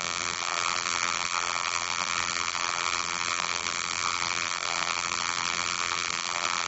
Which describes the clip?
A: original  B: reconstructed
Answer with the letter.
B